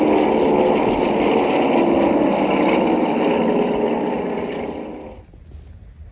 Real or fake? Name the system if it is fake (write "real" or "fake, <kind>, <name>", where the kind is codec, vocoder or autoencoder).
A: real